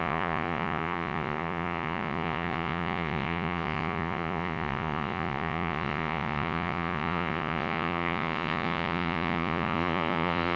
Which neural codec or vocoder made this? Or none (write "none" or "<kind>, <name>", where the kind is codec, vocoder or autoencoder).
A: vocoder, Vocos